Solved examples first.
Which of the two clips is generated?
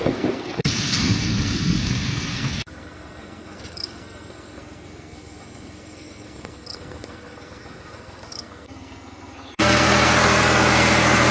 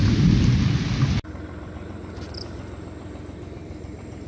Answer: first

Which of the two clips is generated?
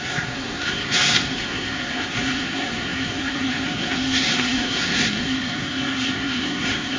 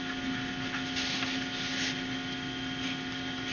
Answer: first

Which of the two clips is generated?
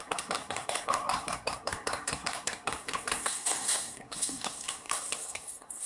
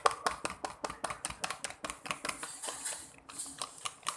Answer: first